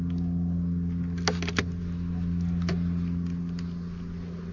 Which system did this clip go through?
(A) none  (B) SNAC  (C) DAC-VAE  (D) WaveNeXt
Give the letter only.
A